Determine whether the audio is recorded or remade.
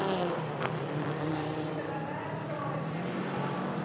remade